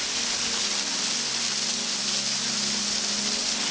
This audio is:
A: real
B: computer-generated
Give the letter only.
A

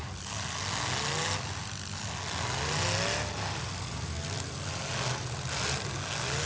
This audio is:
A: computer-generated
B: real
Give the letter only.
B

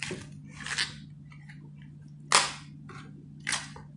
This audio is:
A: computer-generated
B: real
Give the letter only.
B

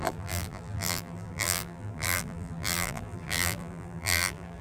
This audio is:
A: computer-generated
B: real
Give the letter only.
A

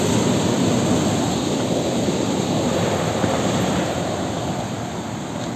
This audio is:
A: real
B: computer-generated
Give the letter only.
A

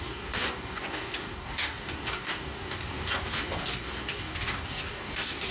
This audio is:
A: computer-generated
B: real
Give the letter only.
A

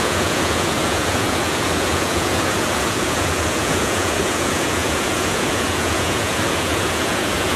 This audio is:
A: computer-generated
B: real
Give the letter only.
A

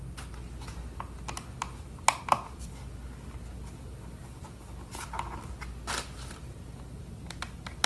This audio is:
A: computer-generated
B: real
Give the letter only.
B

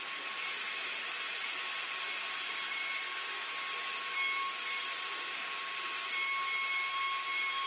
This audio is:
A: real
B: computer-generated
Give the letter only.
A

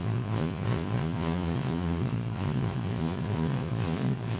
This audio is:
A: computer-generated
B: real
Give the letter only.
A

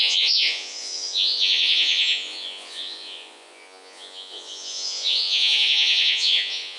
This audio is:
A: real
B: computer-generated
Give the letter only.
B